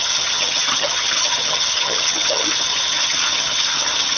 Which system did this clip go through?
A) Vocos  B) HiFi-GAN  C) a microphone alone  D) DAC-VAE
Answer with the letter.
B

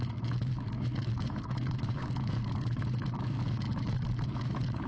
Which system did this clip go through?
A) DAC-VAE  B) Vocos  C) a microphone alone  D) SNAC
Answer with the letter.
A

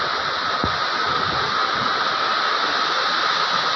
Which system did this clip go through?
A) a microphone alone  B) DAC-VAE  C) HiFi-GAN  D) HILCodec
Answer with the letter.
A